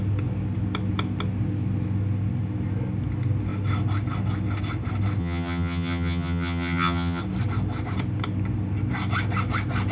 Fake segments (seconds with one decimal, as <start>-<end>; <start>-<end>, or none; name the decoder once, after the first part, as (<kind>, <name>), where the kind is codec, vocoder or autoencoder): 5.2-7.2 (vocoder, HiFi-GAN)